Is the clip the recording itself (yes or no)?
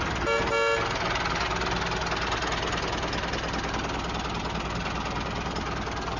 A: yes